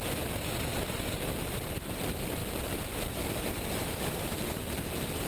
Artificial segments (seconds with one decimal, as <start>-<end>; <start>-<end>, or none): none